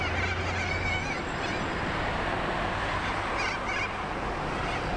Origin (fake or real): real